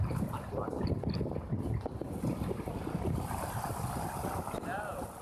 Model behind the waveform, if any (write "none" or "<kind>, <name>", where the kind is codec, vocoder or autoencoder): none